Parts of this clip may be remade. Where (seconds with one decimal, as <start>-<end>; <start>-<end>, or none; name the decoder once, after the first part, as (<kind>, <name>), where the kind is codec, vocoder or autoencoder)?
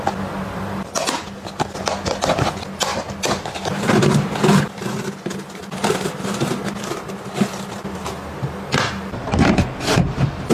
none